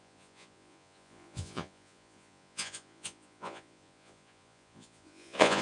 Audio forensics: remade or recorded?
remade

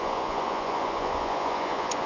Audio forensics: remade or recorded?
remade